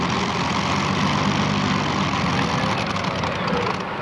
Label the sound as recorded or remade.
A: recorded